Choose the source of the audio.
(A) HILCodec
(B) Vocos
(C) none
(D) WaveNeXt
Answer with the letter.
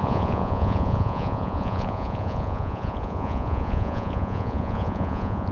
B